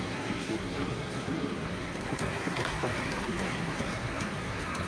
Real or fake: fake